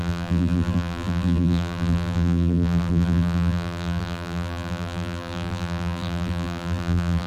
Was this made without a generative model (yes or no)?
no